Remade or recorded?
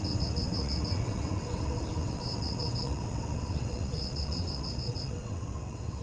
remade